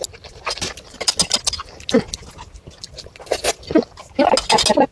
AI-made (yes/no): no